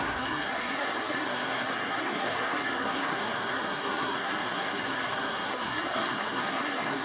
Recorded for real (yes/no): no